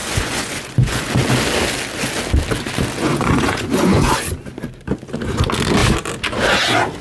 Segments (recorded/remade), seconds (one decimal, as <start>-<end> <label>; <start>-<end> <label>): 0.0-1.1 remade; 1.1-3.0 recorded; 3.0-4.1 remade; 4.1-7.0 recorded